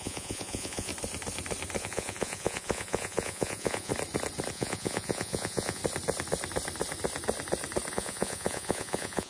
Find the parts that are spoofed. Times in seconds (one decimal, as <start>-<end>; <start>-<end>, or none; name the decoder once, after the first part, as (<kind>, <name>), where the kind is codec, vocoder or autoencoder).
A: 0.0-0.9 (vocoder, Vocos); 1.8-3.9; 4.5-5.8; 7.9-9.3